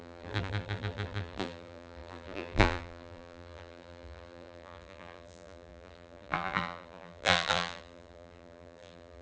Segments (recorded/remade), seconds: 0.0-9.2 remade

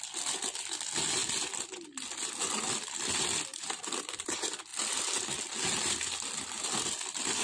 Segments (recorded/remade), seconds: 0.0-3.5 recorded; 3.5-4.1 remade; 4.1-7.4 recorded

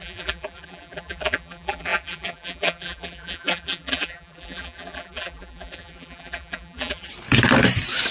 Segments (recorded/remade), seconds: 0.0-7.1 remade; 7.1-8.1 recorded

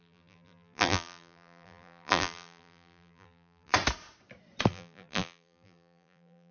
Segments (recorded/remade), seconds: 0.0-3.7 remade; 3.7-4.7 recorded; 4.7-6.5 remade

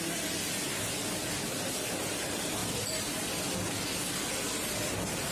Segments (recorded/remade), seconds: 0.0-5.3 recorded

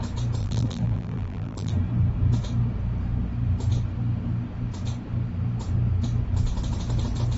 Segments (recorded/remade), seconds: 0.0-0.4 recorded; 0.4-1.7 remade; 1.7-7.4 recorded

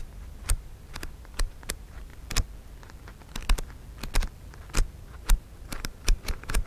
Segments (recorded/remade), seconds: 0.0-2.1 remade; 2.1-5.0 recorded; 5.0-6.7 remade